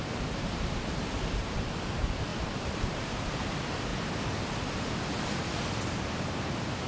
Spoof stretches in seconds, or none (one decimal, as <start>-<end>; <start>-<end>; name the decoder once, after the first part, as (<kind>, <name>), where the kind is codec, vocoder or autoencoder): 0.0-3.9 (vocoder, BigVGAN v2); 6.0-6.9